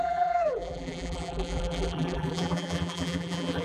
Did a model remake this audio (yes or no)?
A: yes